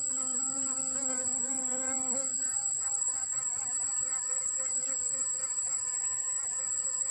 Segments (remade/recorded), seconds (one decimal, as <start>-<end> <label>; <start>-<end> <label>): 0.0-2.3 recorded; 2.3-6.6 remade; 6.6-7.1 recorded